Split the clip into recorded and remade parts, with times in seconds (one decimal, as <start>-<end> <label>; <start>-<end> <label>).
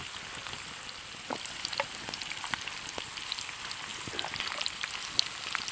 0.0-3.9 recorded; 3.9-4.9 remade; 4.9-5.7 recorded